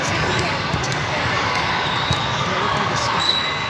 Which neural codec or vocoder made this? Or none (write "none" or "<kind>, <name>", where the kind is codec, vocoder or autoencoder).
codec, DAC